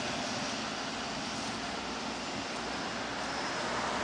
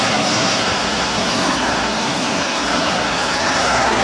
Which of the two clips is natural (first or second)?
first